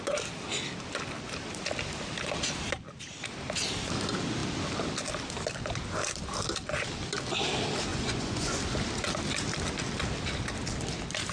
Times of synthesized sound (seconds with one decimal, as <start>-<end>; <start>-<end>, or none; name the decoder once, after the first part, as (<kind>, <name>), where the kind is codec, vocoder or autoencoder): 7.9-8.6 (vocoder, Vocos)